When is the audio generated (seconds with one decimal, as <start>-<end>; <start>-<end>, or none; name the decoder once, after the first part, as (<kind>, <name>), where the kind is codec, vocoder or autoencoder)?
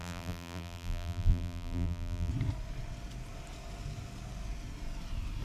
0.0-2.3 (vocoder, BigVGAN v2)